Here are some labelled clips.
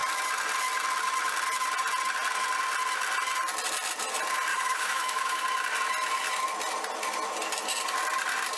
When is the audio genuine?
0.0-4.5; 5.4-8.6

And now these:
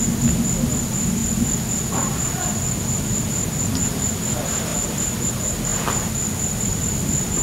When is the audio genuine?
0.0-7.4